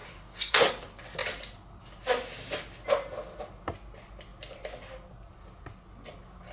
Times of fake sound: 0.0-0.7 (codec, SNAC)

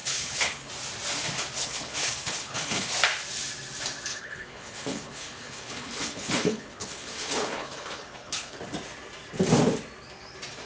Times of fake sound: 0.0-0.7 (codec, HILCodec); 1.6-2.9; 4.1-8.6

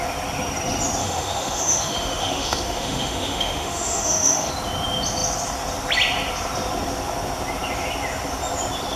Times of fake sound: 1.0-4.5 (autoencoder, DAC-VAE)

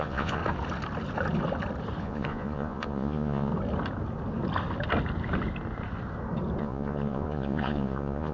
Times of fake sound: 0.0-0.4 (vocoder, Vocos); 2.0-3.5; 6.6-8.3

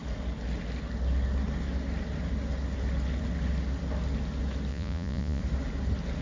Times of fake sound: 4.7-5.4 (vocoder, Vocos)

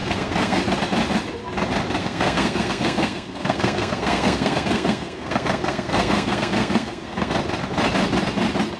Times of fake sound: 0.0-0.6 (codec, SNAC); 2.0-7.3